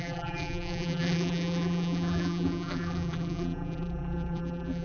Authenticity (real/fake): fake